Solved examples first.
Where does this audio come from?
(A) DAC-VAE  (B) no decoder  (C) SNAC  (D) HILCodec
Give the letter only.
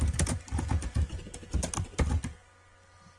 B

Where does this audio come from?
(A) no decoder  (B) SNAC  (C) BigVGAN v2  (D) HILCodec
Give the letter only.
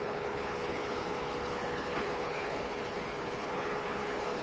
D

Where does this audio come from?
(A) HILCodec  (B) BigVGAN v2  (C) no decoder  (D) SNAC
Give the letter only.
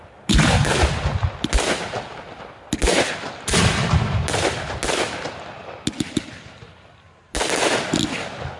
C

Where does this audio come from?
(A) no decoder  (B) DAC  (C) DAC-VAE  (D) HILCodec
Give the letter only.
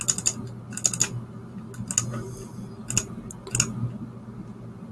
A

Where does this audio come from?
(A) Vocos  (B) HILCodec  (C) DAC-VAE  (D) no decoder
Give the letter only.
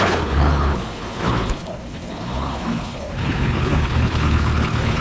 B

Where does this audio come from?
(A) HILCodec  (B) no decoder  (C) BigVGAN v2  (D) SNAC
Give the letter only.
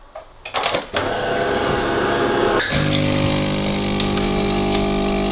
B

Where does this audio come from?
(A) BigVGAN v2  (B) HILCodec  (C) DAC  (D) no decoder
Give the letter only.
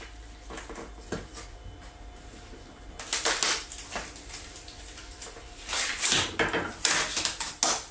D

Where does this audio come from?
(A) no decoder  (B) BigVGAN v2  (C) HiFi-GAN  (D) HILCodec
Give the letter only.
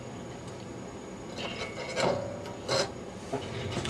A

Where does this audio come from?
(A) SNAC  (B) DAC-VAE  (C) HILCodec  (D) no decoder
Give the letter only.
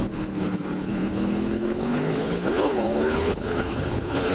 C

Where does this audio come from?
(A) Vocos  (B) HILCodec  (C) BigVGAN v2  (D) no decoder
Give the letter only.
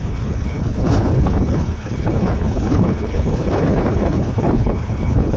B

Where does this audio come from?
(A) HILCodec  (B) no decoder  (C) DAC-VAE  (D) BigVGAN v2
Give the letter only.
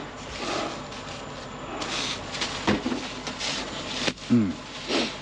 B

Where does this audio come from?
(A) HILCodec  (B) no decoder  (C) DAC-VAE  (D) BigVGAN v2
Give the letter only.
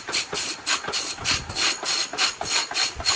B